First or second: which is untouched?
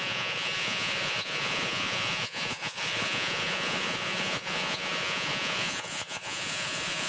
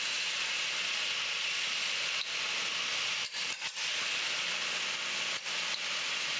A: second